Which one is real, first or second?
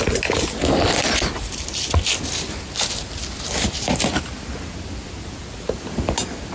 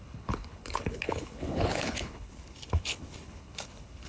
first